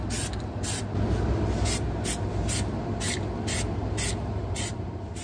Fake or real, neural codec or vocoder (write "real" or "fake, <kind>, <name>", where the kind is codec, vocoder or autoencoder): real